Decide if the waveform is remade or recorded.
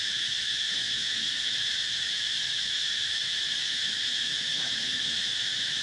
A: remade